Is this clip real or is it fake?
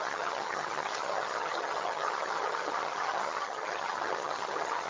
fake